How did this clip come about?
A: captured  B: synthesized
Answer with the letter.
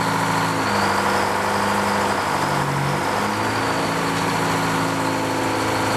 A